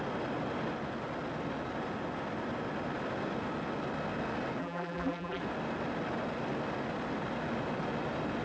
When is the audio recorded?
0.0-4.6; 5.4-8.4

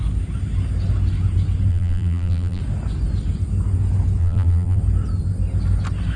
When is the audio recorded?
0.0-1.7; 2.6-4.2; 4.8-6.2

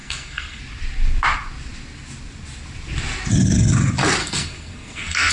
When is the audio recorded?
0.6-4.2

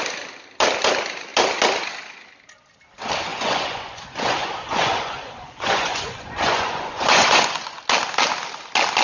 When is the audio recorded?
0.0-3.3; 7.8-9.0

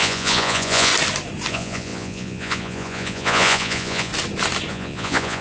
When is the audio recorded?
0.9-1.5; 4.1-4.7

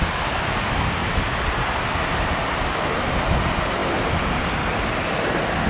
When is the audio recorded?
0.0-5.7

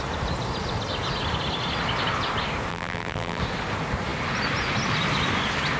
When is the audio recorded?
0.0-2.7; 3.4-5.8

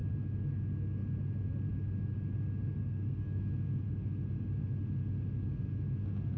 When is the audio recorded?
0.0-2.8; 3.4-6.4